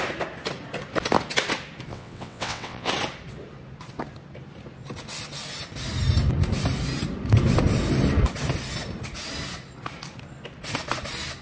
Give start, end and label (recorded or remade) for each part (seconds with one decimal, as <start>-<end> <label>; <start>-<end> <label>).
0.0-1.9 recorded; 1.9-2.9 remade; 2.9-11.4 recorded